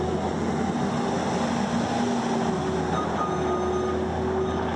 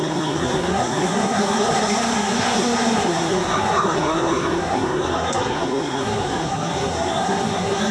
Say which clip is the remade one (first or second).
second